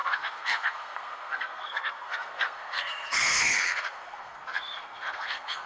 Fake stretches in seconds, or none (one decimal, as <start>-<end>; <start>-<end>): 0.0-5.7